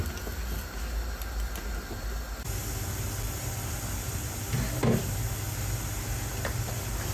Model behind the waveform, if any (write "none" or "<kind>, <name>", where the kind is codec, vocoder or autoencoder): none